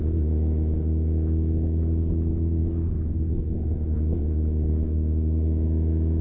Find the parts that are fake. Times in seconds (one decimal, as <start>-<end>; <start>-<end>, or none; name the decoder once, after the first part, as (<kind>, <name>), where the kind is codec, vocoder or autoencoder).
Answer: 0.0-6.2 (autoencoder, DAC-VAE)